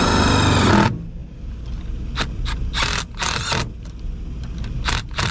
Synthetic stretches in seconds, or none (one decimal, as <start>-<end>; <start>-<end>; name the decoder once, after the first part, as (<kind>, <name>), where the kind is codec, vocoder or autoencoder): none